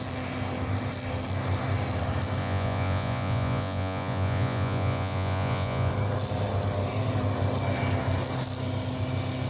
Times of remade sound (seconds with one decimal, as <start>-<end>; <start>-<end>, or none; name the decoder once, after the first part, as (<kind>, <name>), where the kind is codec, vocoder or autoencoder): 2.4-5.9 (vocoder, Vocos)